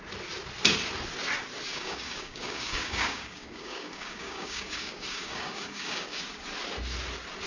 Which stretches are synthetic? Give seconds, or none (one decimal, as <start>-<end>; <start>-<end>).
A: 1.7-6.2